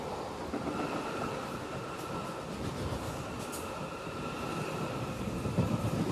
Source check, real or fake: real